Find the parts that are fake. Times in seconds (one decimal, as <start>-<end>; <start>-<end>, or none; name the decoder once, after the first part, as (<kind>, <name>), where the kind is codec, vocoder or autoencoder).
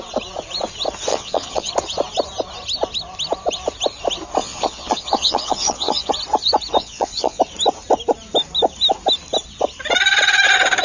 1.1-1.7 (vocoder, Vocos); 4.4-6.1; 6.8-7.4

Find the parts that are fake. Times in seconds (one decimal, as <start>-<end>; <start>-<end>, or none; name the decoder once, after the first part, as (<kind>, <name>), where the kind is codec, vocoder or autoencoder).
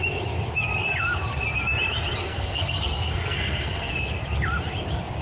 2.2-3.9 (codec, SNAC)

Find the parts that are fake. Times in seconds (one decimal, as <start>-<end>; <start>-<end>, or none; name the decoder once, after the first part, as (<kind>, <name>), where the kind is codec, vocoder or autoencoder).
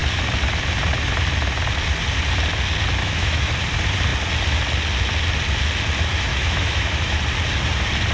3.0-3.5 (autoencoder, DAC-VAE); 6.3-7.2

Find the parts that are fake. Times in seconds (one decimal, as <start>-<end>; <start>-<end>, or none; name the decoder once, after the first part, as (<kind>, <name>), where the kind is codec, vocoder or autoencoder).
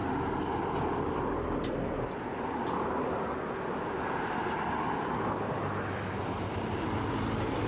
none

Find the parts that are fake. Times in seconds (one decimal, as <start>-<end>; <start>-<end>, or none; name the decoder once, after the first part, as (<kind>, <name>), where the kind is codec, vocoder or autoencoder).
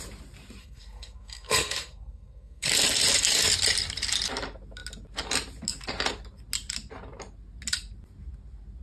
0.6-2.7 (codec, SNAC)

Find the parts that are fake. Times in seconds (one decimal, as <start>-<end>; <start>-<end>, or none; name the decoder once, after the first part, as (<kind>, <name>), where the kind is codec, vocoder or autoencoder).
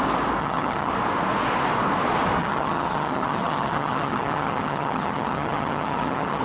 0.4-0.9 (vocoder, HiFi-GAN); 2.4-6.4